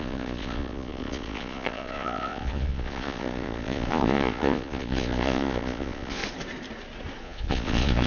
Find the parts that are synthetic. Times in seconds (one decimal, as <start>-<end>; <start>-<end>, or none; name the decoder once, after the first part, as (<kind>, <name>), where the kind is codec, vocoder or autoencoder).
0.0-6.2 (vocoder, Vocos); 7.2-8.1